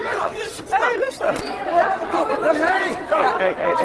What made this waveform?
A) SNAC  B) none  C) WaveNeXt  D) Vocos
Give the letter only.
C